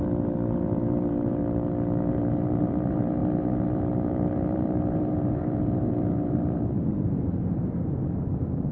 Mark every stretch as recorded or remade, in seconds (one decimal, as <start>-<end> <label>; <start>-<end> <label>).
0.0-1.4 remade; 1.4-2.1 recorded; 2.1-8.7 remade